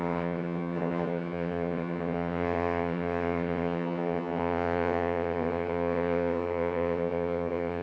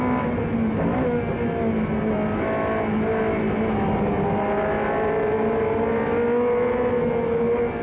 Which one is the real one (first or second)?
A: second